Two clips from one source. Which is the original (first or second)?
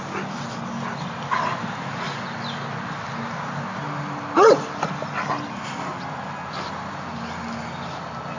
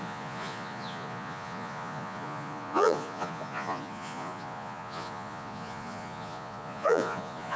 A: first